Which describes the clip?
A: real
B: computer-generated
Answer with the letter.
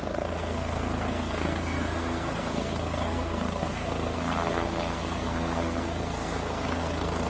B